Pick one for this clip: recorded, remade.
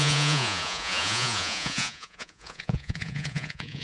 remade